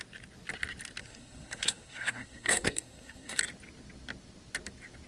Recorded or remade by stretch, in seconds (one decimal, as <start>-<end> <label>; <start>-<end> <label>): 0.0-1.0 recorded; 1.0-3.4 remade; 3.4-5.1 recorded